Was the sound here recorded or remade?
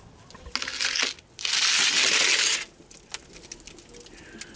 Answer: recorded